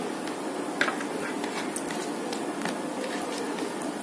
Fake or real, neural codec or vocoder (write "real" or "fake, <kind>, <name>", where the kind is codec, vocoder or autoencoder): real